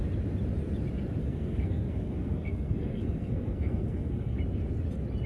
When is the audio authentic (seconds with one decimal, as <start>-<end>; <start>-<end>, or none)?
0.0-1.2; 4.4-5.3